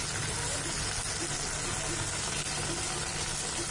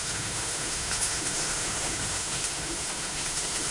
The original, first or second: first